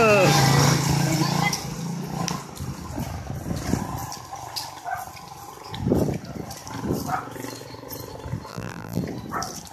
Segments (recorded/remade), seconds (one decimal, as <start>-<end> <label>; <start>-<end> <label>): 0.0-8.5 recorded; 8.5-9.0 remade; 9.0-9.7 recorded